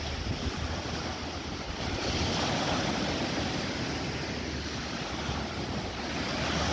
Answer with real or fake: real